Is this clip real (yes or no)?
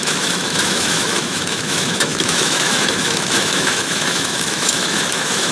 no